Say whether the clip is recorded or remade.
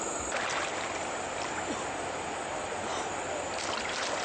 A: recorded